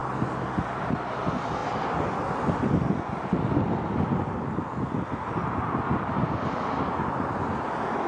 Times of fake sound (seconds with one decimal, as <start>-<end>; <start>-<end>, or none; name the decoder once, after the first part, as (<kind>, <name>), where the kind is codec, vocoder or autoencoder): none